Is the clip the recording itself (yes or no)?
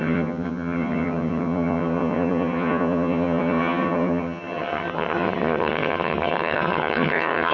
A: no